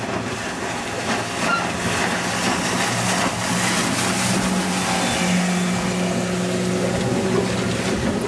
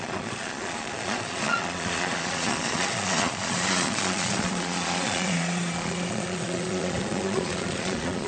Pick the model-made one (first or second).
second